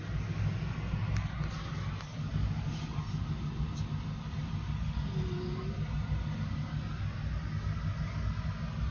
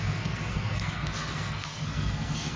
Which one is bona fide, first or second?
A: first